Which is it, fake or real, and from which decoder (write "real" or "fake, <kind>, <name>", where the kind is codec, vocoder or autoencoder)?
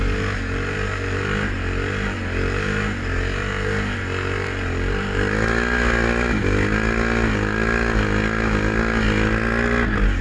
real